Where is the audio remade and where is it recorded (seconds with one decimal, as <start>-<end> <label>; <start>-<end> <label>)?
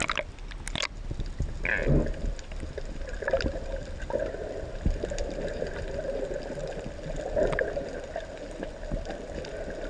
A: 0.0-9.9 recorded